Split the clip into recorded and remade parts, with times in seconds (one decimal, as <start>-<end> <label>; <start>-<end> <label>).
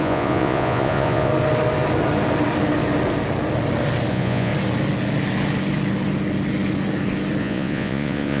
0.0-1.3 remade; 1.3-4.1 recorded; 4.1-4.5 remade; 4.5-7.4 recorded; 7.4-8.4 remade